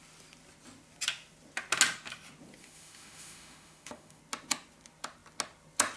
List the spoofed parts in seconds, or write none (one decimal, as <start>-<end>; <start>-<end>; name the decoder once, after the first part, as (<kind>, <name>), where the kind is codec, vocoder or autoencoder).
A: 2.6-4.2 (autoencoder, DAC-VAE)